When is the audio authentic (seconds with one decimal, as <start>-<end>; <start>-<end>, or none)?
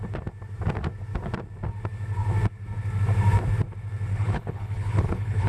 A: 0.0-4.1